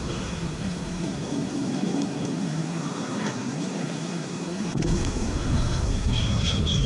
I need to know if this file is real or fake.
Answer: fake